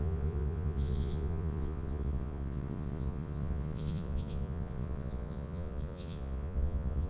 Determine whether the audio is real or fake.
fake